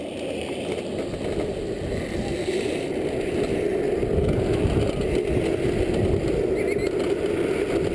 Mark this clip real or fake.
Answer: real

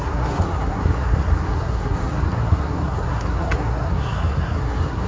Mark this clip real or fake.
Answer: fake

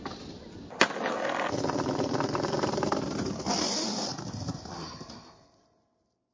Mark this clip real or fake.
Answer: real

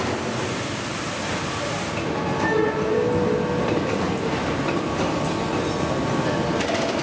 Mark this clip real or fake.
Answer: real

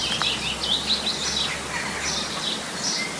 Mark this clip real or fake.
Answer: real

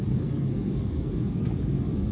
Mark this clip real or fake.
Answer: fake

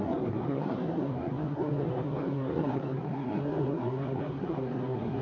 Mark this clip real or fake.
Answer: fake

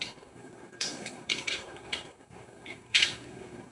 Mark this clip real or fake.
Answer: fake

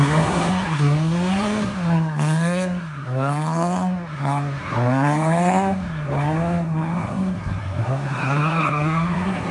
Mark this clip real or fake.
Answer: fake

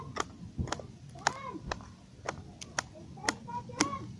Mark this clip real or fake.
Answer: real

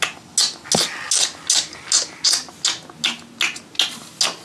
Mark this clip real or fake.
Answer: real